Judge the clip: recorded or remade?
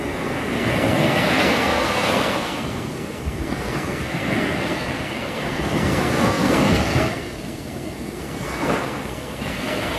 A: remade